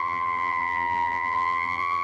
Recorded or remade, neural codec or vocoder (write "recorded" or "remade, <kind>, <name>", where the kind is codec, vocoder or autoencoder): remade, vocoder, BigVGAN v2